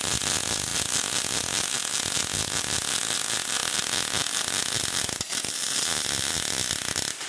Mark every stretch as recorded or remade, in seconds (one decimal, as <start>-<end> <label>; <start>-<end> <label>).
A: 0.0-7.3 recorded